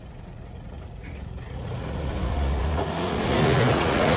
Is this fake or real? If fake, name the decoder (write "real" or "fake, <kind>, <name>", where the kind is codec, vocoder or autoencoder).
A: fake, vocoder, Vocos